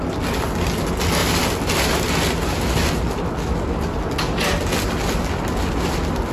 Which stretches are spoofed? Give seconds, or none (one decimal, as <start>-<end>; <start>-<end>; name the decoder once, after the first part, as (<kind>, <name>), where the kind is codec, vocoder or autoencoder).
none